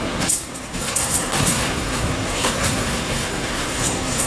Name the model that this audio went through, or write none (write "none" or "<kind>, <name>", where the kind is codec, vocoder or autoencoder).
codec, SNAC